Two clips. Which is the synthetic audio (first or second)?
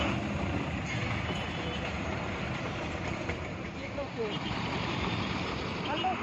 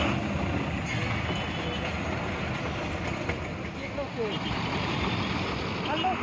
first